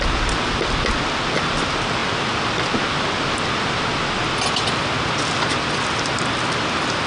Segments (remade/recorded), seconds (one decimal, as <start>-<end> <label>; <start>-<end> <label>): 0.0-7.1 recorded